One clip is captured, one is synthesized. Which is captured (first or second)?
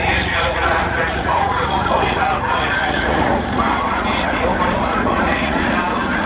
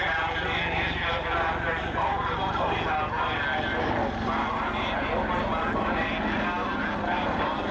second